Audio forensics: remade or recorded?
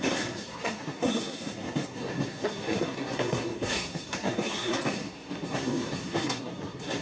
remade